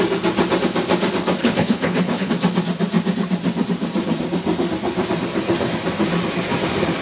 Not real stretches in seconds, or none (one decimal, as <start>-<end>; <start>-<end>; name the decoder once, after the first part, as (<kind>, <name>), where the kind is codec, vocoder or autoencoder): 1.4-2.3 (codec, HILCodec)